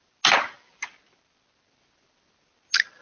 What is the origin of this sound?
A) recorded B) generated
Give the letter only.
A